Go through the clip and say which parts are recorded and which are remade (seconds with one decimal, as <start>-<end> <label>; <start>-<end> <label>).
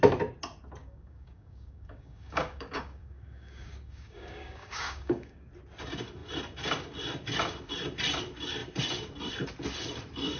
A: 0.0-0.8 recorded; 0.8-5.5 remade; 5.5-10.4 recorded